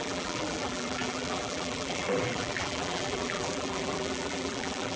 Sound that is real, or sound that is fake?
fake